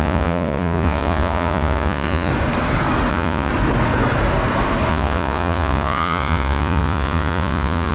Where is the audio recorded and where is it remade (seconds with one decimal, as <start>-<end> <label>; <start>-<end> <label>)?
0.0-2.3 remade; 2.3-3.1 recorded; 3.1-3.5 remade; 3.5-4.9 recorded; 4.9-7.9 remade